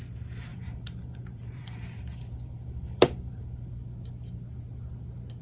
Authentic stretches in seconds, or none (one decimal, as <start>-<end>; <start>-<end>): 0.0-0.5; 3.7-5.4